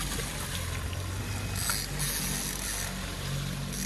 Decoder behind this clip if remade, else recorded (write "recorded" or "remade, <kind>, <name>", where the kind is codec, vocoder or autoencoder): recorded